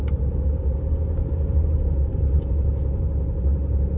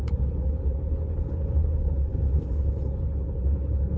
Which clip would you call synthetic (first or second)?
second